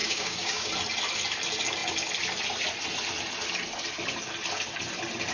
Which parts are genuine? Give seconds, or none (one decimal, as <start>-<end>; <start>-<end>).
0.7-5.3